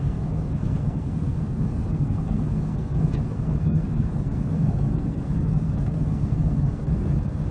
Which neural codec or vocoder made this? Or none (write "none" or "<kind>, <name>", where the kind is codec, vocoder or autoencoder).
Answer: codec, SNAC